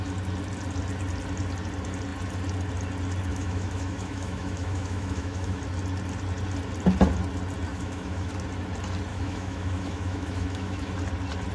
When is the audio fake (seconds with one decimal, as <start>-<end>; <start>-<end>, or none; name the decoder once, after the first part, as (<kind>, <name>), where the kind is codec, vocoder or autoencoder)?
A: 3.3-5.6 (autoencoder, DAC-VAE); 7.7-8.3; 9.1-10.9